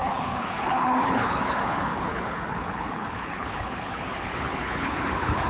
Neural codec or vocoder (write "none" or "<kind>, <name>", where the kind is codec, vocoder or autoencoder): codec, HILCodec